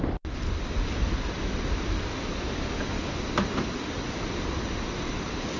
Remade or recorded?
recorded